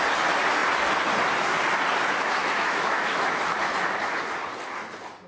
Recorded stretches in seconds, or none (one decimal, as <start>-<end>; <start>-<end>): 0.0-2.4; 3.4-5.3

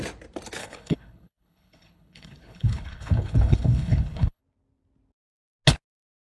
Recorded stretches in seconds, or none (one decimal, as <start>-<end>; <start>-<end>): 0.0-0.6; 4.4-6.3

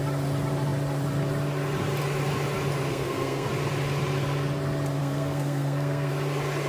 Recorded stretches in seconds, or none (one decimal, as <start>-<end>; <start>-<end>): 0.0-2.9; 3.5-5.0; 6.1-6.7